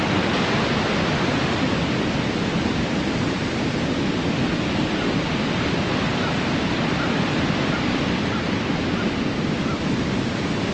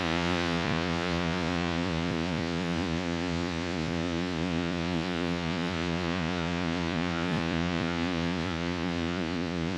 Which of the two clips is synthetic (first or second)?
second